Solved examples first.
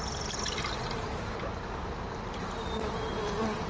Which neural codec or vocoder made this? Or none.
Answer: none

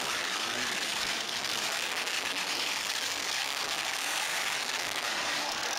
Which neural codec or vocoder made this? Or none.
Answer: codec, DAC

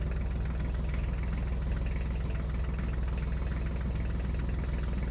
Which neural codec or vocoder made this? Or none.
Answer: none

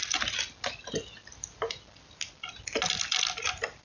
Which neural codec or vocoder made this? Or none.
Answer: none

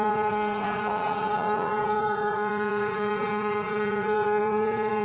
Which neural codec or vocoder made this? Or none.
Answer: vocoder, Vocos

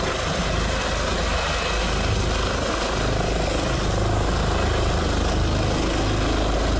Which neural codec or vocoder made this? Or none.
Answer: none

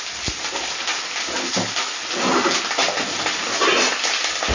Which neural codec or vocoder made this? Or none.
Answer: none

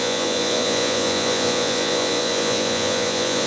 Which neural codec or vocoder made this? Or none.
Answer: vocoder, Vocos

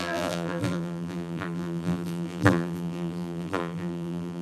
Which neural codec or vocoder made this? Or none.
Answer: vocoder, BigVGAN v2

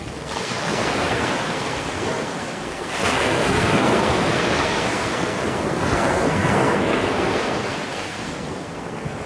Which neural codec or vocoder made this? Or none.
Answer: codec, SNAC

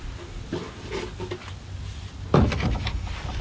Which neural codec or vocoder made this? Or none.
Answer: none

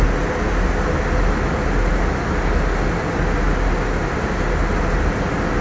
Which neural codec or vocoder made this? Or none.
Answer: none